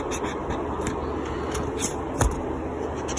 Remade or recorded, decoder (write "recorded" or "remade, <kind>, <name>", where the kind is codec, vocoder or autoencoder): recorded